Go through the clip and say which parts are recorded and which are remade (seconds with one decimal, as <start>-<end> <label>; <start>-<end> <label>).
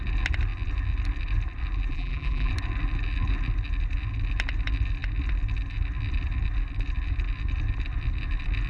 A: 0.0-1.9 recorded; 1.9-2.5 remade; 2.5-8.7 recorded